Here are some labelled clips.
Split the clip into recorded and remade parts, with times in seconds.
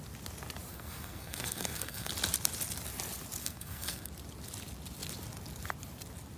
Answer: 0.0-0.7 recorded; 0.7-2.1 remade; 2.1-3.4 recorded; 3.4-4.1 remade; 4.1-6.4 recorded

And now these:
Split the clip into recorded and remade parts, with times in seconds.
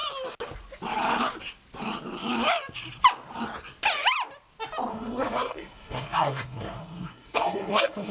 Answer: 0.0-4.9 recorded; 4.9-8.1 remade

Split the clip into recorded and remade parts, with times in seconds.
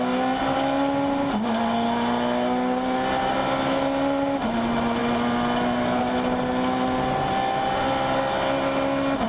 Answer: 0.0-9.3 recorded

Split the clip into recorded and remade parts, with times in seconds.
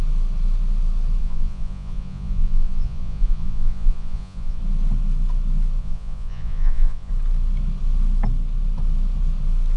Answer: 0.0-1.2 recorded; 1.2-4.6 remade; 4.6-5.8 recorded; 5.8-7.1 remade; 7.1-9.8 recorded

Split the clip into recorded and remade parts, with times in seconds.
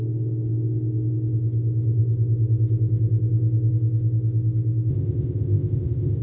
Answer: 0.0-4.9 recorded; 4.9-6.2 remade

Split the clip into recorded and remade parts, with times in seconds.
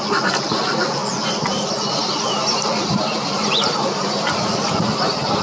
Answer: 0.0-5.4 recorded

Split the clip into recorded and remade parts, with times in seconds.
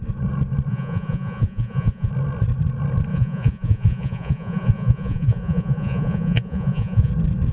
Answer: 0.0-0.7 recorded; 0.7-2.1 remade; 2.1-3.1 recorded; 3.1-7.1 remade; 7.1-7.5 recorded